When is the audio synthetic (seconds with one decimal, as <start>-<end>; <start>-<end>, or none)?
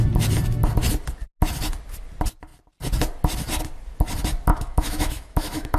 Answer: 4.5-5.8